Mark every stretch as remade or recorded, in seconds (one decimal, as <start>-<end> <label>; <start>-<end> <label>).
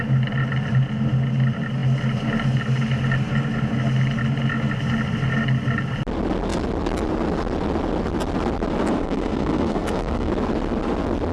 0.0-9.0 recorded; 9.0-10.3 remade; 10.3-11.3 recorded